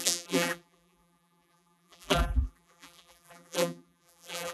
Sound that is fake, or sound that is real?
fake